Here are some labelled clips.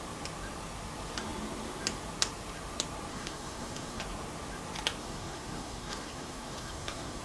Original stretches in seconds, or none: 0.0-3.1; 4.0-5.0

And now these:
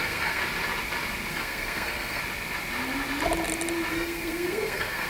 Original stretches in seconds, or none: 0.4-1.3; 2.2-3.9

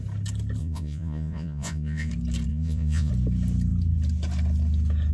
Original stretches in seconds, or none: 0.0-0.6; 2.1-2.5; 3.1-5.1

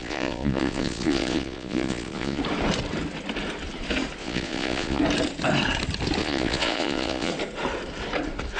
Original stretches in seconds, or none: 2.4-4.2; 5.0-6.2; 7.3-8.6

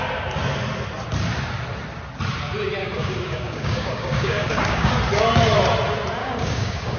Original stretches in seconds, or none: 0.0-2.8; 4.9-6.2

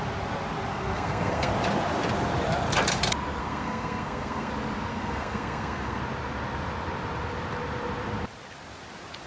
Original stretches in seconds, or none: 0.0-0.7; 1.5-3.4; 4.5-4.9; 6.0-9.3